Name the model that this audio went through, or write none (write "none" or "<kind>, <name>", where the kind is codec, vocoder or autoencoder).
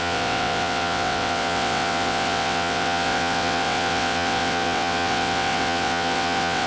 vocoder, WaveNeXt